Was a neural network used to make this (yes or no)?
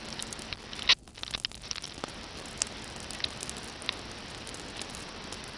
no